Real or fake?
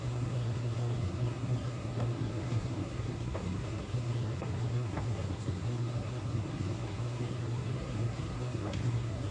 fake